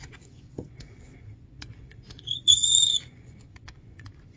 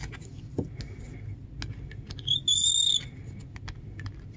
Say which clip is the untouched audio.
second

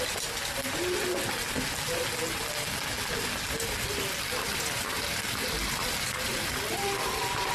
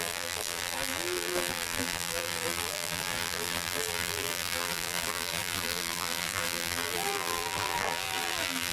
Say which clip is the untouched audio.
first